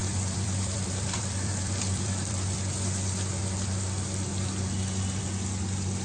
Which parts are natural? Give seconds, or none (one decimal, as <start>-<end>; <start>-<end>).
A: 2.7-6.0